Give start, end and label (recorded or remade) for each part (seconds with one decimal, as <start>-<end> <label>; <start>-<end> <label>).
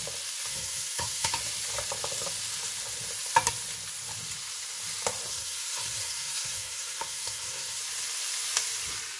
0.0-0.5 recorded; 0.5-1.3 remade; 1.3-5.3 recorded; 5.3-7.8 remade; 7.8-9.2 recorded